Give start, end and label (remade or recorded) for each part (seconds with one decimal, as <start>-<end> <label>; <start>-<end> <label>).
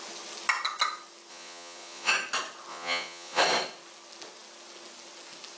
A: 0.0-1.3 recorded; 1.3-2.1 remade; 2.1-2.7 recorded; 2.7-3.4 remade; 3.4-5.6 recorded